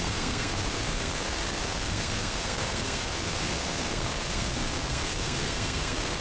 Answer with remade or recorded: remade